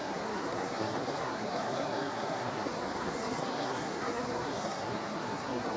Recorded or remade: remade